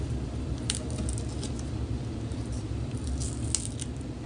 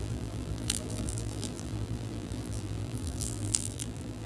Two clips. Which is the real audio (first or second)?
first